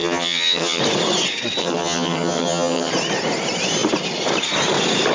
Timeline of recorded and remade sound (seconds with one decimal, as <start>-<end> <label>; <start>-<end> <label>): 0.0-0.8 remade; 0.8-1.6 recorded; 1.6-2.9 remade; 2.9-5.1 recorded